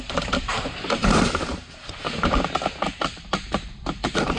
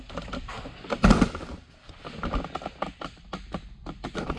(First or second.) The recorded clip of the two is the second